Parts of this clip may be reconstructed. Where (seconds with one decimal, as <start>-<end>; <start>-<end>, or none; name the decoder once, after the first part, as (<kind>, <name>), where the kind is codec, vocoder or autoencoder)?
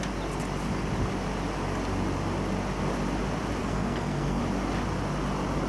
3.6-4.4 (codec, SNAC)